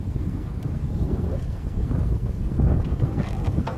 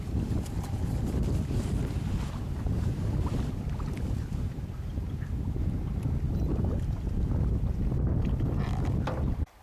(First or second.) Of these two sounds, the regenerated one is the first